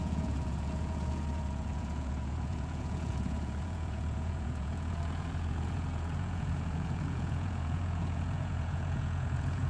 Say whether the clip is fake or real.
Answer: fake